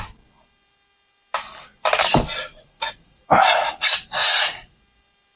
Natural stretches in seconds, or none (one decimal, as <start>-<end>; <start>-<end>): 0.0-2.5; 3.2-4.2; 4.8-5.4